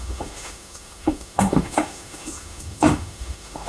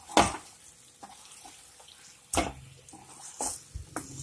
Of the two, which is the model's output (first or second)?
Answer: first